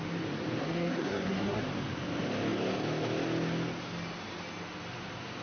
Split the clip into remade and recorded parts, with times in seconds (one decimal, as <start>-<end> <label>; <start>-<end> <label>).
0.0-0.6 recorded; 0.6-1.6 remade; 1.6-5.4 recorded